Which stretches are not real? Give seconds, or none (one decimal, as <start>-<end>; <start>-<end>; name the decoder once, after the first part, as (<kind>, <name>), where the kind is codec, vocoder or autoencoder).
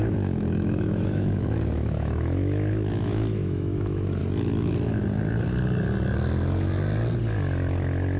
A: 0.0-4.2 (autoencoder, DAC-VAE)